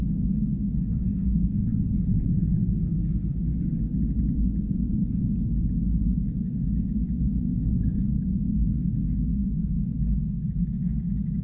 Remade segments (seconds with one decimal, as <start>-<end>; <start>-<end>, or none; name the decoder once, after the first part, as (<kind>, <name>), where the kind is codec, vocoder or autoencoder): 0.0-1.7 (autoencoder, DAC-VAE); 6.4-11.4